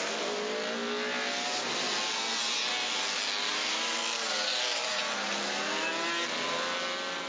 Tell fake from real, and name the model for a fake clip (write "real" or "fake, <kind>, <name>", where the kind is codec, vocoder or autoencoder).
real